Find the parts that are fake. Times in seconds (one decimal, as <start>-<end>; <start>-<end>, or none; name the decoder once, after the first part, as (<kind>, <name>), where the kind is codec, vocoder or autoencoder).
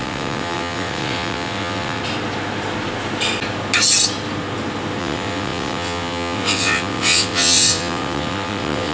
0.0-2.0 (vocoder, WaveNeXt); 5.0-8.9